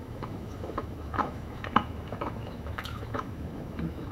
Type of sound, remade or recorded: remade